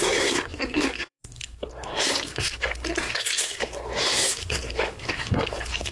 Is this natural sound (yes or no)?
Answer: no